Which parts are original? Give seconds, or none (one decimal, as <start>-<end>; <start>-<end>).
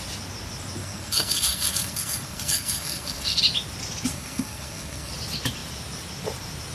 0.0-0.8; 3.4-4.1; 5.1-6.7